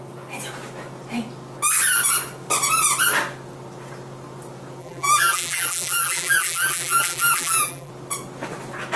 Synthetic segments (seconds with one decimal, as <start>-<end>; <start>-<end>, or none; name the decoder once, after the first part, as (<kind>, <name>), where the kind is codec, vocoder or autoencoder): 4.8-7.9 (vocoder, BigVGAN v2)